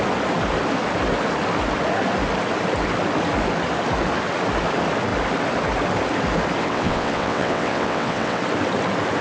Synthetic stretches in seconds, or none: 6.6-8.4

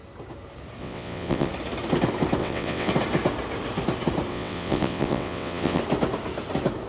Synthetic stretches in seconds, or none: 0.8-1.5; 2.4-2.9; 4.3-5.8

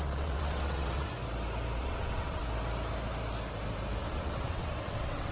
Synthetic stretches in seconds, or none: 0.0-1.1; 1.8-2.4; 4.1-5.3

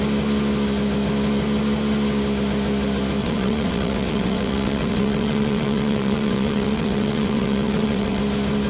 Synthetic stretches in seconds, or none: 3.2-8.2

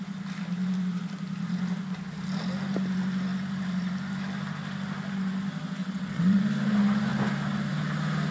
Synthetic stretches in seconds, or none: 5.8-6.4

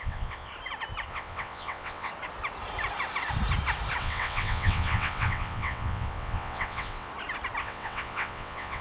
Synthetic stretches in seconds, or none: 0.0-0.5; 1.1-2.1; 4.0-7.1; 7.6-8.8

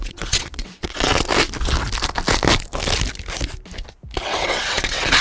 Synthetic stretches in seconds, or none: 0.0-1.1; 4.2-5.2

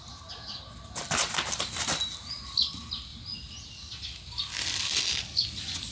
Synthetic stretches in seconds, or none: none